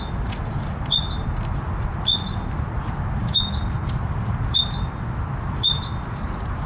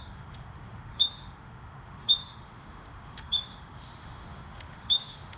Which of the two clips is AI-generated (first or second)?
second